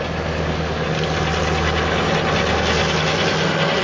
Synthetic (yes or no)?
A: no